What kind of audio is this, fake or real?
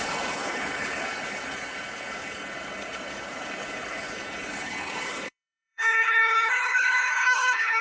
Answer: fake